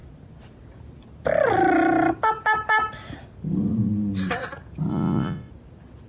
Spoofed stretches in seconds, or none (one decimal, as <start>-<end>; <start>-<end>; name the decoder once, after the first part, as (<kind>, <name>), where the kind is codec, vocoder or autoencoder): 4.9-5.5 (vocoder, Vocos)